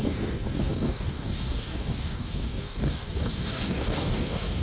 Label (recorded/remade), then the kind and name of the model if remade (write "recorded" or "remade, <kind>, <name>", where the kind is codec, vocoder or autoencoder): remade, codec, DAC